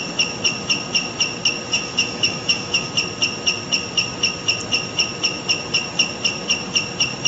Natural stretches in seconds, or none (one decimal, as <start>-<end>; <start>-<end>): 0.0-1.7; 2.9-7.3